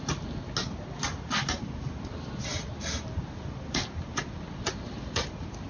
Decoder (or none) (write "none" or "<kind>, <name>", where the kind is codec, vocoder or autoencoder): none